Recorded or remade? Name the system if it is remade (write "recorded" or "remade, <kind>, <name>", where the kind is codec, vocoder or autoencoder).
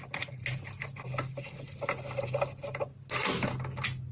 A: recorded